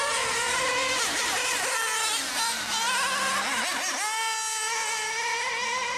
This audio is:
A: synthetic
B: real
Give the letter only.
B